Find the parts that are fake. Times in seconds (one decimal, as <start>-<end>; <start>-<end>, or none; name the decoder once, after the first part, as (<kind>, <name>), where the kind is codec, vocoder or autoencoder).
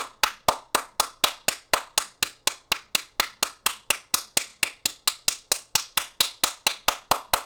none